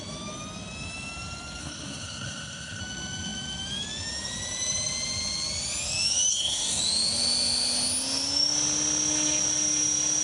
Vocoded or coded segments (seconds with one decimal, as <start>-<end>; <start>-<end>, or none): 1.6-2.8; 6.3-6.8